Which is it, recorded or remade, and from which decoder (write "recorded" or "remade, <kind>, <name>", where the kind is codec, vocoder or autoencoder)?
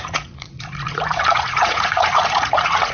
remade, vocoder, Vocos